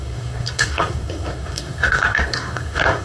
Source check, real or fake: fake